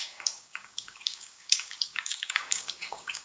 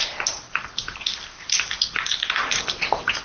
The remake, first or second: first